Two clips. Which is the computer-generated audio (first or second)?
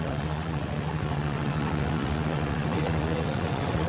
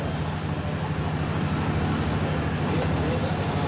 first